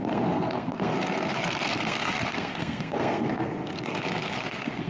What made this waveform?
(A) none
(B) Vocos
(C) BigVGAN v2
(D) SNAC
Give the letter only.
D